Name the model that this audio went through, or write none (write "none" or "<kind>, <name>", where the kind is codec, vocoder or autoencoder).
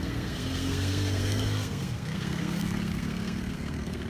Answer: codec, SNAC